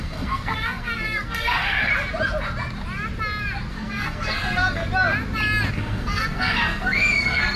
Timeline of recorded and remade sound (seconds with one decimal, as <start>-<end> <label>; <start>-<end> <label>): 0.0-1.9 remade; 1.9-3.7 recorded; 3.7-4.8 remade; 4.8-5.7 recorded; 5.7-7.6 remade